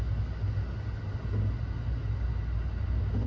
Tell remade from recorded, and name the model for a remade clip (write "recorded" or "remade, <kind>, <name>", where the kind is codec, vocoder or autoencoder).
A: recorded